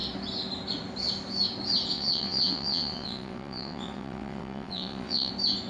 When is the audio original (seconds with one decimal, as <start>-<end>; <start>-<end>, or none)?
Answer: 0.0-1.9; 5.3-5.7